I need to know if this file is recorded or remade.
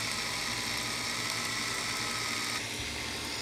recorded